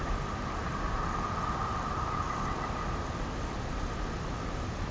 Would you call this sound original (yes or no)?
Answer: yes